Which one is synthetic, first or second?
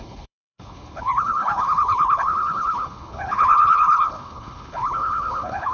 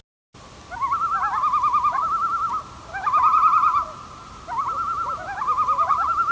first